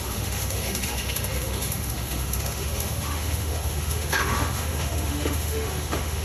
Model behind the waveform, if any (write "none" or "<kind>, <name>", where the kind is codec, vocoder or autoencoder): autoencoder, DAC-VAE